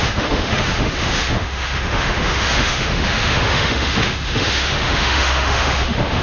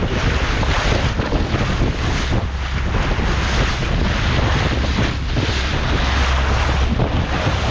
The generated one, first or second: first